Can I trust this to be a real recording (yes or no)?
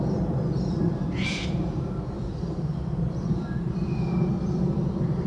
no